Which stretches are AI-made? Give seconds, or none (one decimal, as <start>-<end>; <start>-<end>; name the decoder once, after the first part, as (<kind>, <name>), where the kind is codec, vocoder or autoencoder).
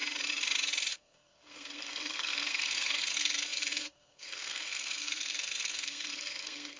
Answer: 0.9-6.8 (codec, SNAC)